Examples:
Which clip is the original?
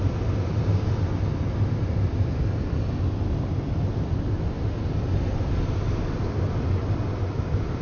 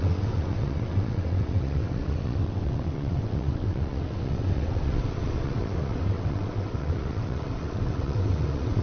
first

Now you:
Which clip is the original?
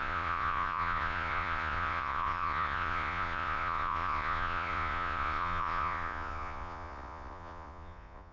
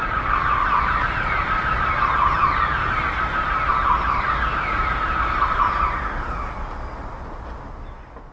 second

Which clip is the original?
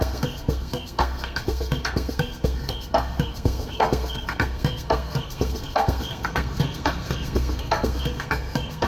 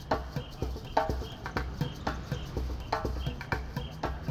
second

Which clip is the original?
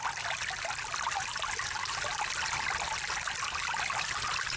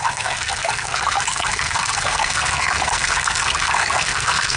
first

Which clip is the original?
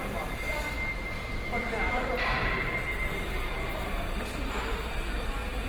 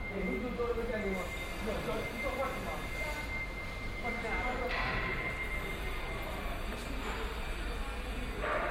second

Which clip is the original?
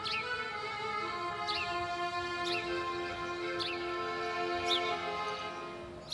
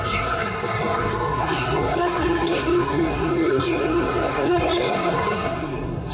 first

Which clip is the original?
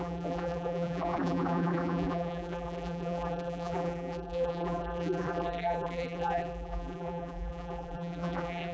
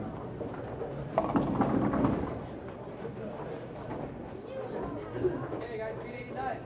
second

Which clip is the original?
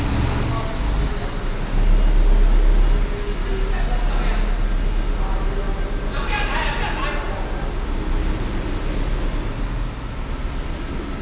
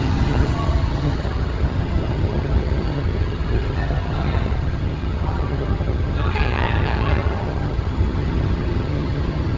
first